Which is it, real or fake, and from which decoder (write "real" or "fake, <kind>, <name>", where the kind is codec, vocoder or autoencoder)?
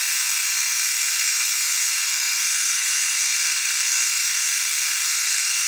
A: fake, codec, SNAC